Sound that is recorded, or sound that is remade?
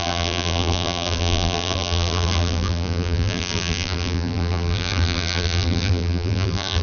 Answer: remade